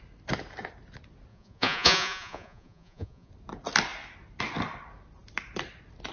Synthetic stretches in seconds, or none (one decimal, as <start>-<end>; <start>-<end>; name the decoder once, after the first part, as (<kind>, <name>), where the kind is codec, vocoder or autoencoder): 1.3-3.3 (vocoder, Vocos)